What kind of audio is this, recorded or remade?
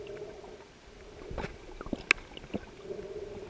recorded